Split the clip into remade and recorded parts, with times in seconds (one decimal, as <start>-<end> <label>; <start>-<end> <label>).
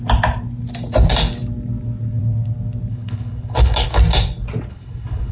0.0-2.9 recorded; 2.9-3.9 remade; 3.9-4.7 recorded; 4.7-5.3 remade